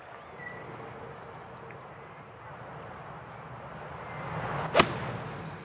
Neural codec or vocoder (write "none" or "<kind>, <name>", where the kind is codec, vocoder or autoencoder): none